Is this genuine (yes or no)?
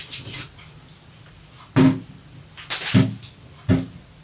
yes